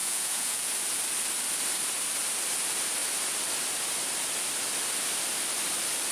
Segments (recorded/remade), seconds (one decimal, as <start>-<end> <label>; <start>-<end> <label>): 0.0-0.7 remade; 0.7-6.1 recorded